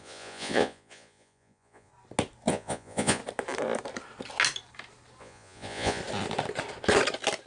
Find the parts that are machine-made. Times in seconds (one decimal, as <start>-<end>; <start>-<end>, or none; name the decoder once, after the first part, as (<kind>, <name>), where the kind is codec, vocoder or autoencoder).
0.0-1.9 (vocoder, Vocos); 2.5-3.2; 5.2-6.0